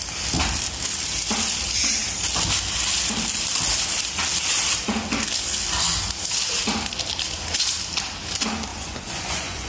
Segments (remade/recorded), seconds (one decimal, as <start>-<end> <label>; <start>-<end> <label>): 0.0-8.7 recorded; 8.7-9.7 remade